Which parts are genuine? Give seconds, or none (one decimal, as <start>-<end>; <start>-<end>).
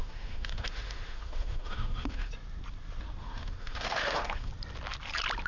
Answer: 2.3-3.2; 4.5-5.5